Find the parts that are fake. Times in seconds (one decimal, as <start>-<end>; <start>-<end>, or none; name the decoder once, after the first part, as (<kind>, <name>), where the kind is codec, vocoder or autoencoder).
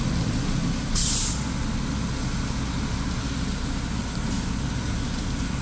none